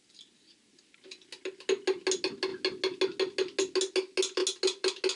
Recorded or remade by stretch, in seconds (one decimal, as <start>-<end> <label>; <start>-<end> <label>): 0.0-5.2 recorded